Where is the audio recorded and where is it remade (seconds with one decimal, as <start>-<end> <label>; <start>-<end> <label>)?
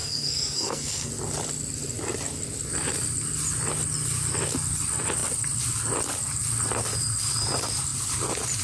0.0-1.1 remade; 1.1-8.6 recorded